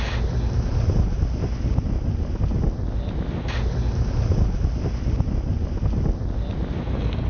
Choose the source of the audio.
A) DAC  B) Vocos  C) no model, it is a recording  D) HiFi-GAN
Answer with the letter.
C